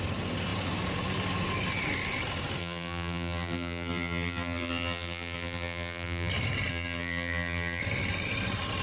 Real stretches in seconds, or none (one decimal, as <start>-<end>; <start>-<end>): 0.0-2.6; 6.3-6.7; 7.8-8.8